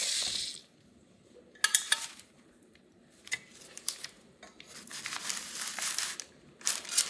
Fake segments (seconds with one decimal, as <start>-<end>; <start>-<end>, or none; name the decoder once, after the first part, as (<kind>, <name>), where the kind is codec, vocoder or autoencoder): 1.7-4.4 (vocoder, BigVGAN v2)